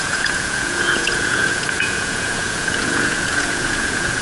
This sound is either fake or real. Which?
fake